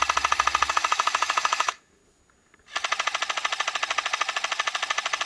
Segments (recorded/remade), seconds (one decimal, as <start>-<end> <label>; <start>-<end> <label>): 0.0-0.7 recorded; 0.7-2.0 remade; 2.0-5.3 recorded